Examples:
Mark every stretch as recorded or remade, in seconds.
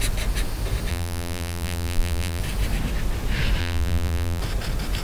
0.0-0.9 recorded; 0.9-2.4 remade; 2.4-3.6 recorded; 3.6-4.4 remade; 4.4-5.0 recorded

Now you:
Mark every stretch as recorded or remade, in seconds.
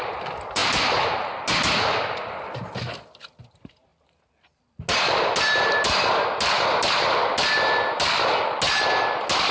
0.0-9.5 recorded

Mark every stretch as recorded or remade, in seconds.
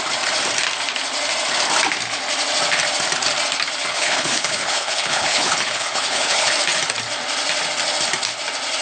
0.0-3.9 recorded; 3.9-6.5 remade; 6.5-8.8 recorded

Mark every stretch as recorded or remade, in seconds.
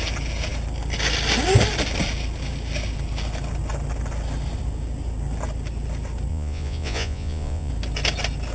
0.0-6.3 recorded; 6.3-7.7 remade; 7.7-8.5 recorded